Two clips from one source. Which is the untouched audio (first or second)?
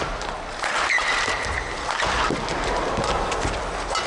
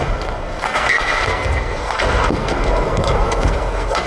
first